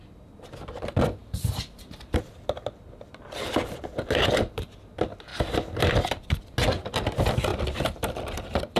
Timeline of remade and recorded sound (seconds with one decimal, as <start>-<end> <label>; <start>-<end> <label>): 0.0-1.2 recorded; 1.2-2.4 remade; 2.4-7.5 recorded; 7.5-8.8 remade